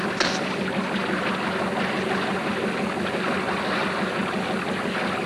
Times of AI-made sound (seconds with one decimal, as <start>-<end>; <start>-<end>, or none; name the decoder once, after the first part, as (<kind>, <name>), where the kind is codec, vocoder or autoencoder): none